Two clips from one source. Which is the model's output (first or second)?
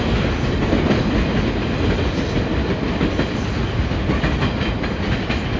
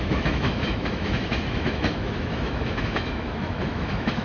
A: second